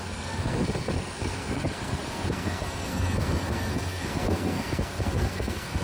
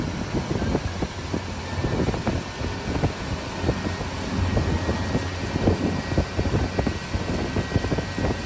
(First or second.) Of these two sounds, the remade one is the first